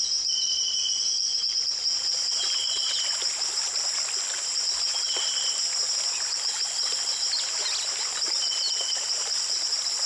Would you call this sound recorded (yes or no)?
yes